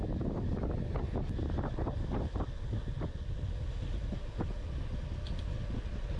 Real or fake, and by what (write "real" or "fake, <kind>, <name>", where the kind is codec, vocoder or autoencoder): real